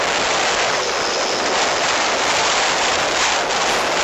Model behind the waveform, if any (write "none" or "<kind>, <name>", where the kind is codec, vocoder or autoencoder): none